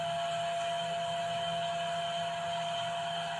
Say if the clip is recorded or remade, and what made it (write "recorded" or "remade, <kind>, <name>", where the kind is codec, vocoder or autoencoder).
recorded